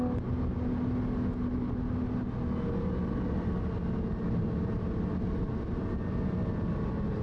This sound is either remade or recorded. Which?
recorded